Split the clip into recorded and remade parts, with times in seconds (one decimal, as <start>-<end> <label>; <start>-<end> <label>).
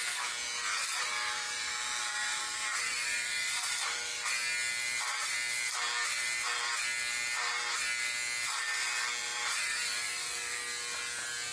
0.0-0.6 recorded; 0.6-4.3 remade; 4.3-9.2 recorded; 9.2-10.6 remade; 10.6-11.5 recorded